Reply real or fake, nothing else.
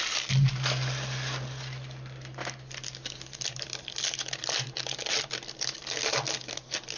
real